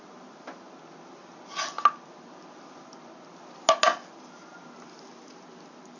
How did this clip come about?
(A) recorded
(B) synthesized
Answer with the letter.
A